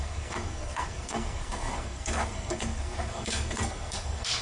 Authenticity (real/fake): fake